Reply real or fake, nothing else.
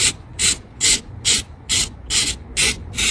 fake